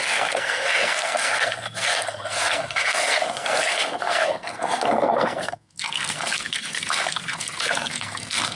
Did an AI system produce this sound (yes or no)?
yes